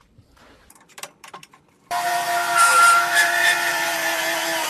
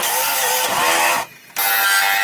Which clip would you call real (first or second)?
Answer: second